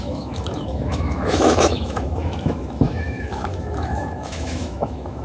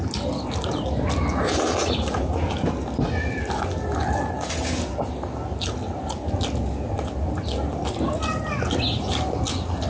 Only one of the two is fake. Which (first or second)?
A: first